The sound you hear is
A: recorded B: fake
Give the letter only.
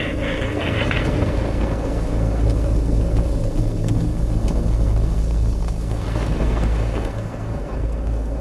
B